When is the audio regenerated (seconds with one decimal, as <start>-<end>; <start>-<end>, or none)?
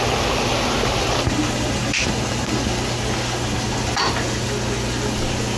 none